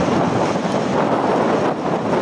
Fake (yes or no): no